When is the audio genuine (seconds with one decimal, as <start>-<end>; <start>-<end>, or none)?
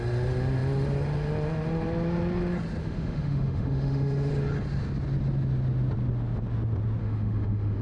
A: 0.0-2.8; 4.3-7.0